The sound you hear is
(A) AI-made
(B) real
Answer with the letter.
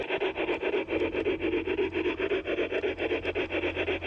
B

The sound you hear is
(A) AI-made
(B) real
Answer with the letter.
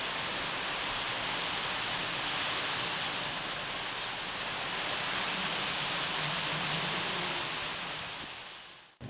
B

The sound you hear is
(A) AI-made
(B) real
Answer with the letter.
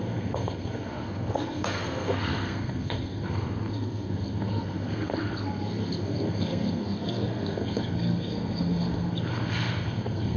A